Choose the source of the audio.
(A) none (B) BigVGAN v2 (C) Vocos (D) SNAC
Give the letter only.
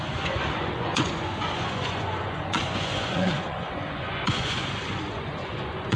C